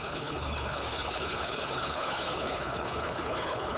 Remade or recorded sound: remade